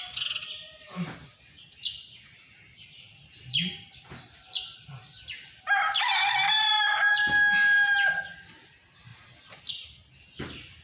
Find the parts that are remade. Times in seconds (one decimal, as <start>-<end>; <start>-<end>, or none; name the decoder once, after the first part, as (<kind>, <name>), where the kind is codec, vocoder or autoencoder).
none